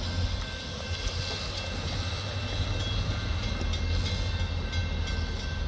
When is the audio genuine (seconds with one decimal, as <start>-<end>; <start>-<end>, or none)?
0.0-5.7